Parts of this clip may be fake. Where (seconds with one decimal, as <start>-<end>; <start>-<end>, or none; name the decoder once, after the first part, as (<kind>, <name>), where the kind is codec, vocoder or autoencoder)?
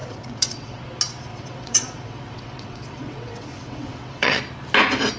0.0-0.8 (vocoder, WaveNeXt); 1.3-4.4